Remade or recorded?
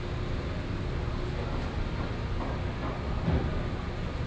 recorded